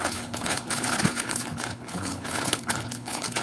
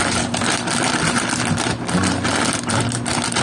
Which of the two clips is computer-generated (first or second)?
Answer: first